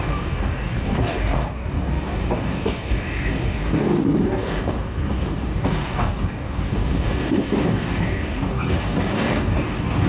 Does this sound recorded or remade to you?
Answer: remade